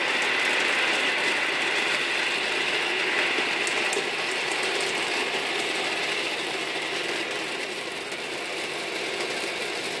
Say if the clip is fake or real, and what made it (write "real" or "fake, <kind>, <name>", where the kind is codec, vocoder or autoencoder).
real